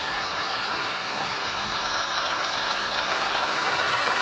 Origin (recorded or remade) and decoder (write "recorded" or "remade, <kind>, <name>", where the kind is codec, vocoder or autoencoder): remade, codec, SNAC